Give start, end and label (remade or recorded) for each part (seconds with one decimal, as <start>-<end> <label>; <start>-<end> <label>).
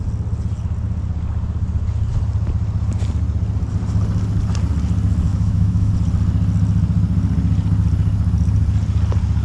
0.0-5.3 recorded; 5.3-5.9 remade; 5.9-9.4 recorded